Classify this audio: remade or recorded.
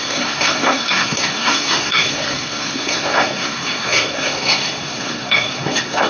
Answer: remade